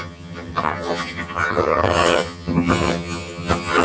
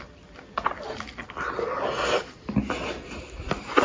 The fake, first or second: first